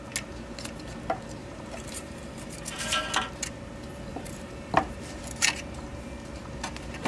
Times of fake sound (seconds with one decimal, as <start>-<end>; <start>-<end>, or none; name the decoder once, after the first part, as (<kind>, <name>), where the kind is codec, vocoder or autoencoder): 1.4-3.0 (vocoder, BigVGAN v2); 4.1-5.2